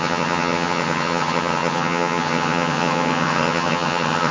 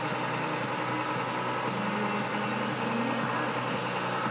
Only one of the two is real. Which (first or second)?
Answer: second